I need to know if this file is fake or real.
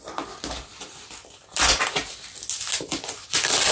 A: real